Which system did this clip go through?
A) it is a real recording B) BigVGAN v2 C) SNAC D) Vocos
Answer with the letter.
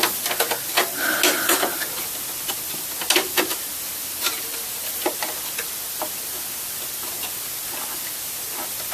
A